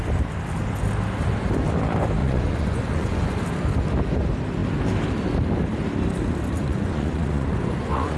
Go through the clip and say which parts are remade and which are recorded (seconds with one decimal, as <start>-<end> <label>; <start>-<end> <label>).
0.0-2.2 recorded; 2.2-3.4 remade; 3.4-6.6 recorded; 6.6-8.2 remade